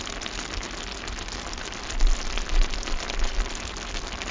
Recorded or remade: recorded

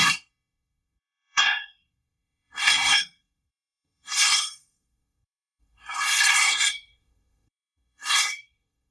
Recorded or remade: remade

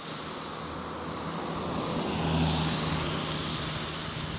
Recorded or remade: recorded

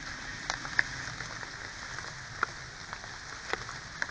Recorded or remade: recorded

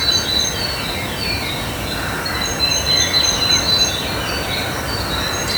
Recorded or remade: recorded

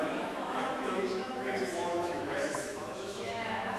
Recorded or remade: remade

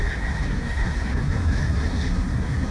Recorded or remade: remade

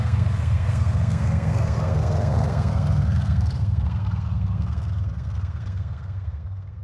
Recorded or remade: remade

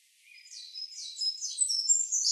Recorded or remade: recorded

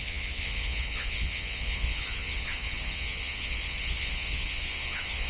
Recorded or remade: remade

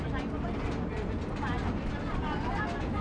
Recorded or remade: recorded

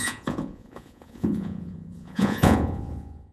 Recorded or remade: remade